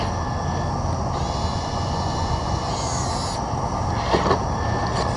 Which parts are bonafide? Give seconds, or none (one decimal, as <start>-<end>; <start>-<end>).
0.0-1.5; 2.6-5.2